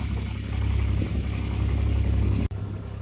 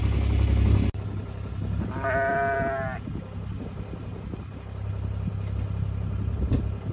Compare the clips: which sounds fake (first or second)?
first